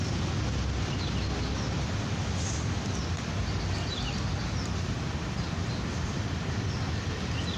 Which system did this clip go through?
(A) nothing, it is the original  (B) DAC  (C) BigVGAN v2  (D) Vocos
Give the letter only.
A